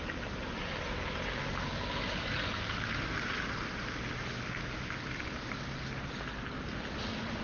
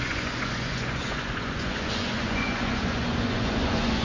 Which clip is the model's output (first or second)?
second